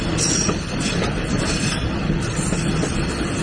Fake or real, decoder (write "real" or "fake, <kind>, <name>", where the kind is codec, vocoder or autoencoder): real